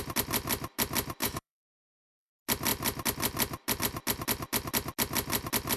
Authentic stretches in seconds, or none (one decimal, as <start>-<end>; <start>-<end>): 0.0-1.2; 2.3-5.8